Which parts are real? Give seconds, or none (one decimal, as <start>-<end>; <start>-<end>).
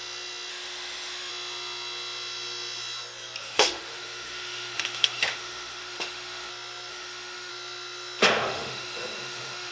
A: 0.0-0.5; 1.3-3.4; 6.5-6.9; 7.5-8.2